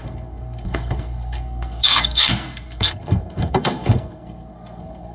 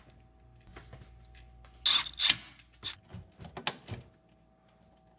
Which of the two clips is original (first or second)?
second